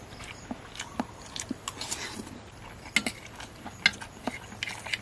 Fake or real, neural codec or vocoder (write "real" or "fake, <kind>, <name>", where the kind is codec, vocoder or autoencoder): real